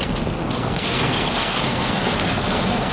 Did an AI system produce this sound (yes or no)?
yes